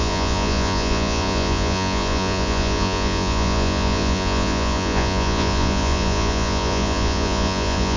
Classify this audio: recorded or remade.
remade